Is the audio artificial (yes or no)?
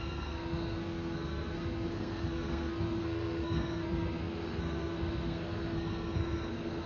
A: yes